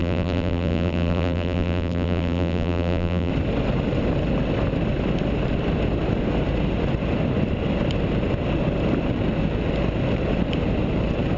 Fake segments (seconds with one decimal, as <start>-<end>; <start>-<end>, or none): 0.0-3.3